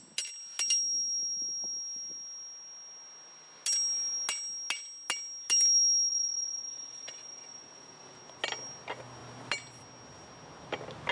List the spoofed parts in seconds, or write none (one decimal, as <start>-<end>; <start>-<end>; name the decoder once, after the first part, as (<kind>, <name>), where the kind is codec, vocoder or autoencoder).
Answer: 6.1-8.2 (vocoder, Vocos)